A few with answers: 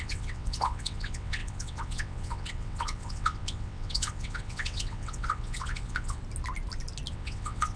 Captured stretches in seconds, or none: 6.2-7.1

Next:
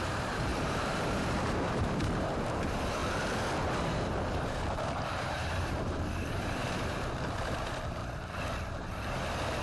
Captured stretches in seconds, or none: 3.0-3.8; 8.0-8.7

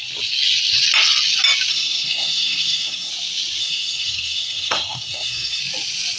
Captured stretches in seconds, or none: 0.0-1.7; 3.1-3.6; 5.6-6.2

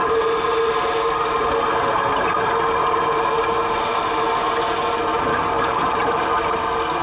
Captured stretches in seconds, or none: 0.0-5.3; 5.8-7.0

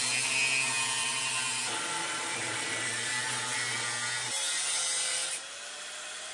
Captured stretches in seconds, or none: 0.0-1.0; 3.1-5.0

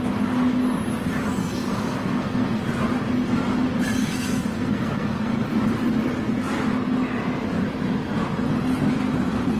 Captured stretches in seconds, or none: 0.0-1.4; 2.6-4.0; 5.4-9.6

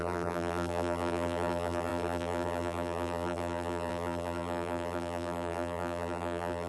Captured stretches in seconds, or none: none

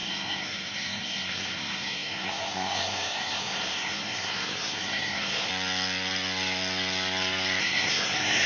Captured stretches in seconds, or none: 5.5-7.6